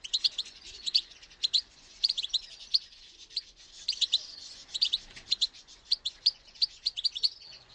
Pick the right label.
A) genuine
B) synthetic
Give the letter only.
B